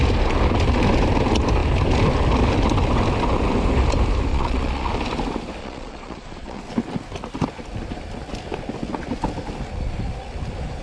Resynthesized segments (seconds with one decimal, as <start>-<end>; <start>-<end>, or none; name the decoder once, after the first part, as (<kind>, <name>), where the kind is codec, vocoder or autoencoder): 4.3-4.9 (vocoder, Vocos); 5.6-6.6